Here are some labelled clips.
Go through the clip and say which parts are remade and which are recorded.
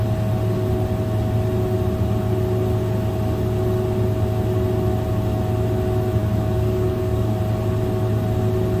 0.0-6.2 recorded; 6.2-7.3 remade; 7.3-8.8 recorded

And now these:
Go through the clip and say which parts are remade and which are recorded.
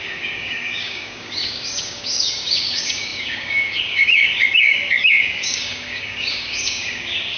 0.0-7.4 remade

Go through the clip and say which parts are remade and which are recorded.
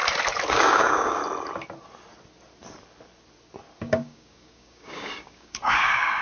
0.0-0.5 recorded; 0.5-1.2 remade; 1.2-3.8 recorded; 3.8-6.2 remade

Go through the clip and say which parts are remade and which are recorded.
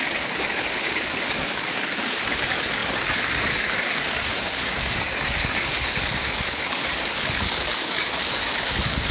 0.0-9.1 remade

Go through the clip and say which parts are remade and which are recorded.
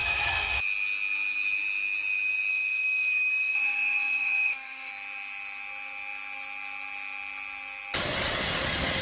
0.0-0.5 remade; 0.5-2.5 recorded; 2.5-4.9 remade; 4.9-9.0 recorded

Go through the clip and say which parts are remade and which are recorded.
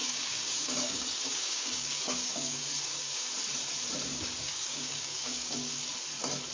0.0-3.3 remade; 3.3-4.1 recorded; 4.1-5.7 remade; 5.7-6.5 recorded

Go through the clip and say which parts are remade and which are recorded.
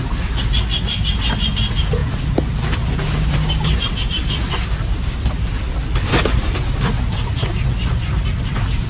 0.0-8.9 recorded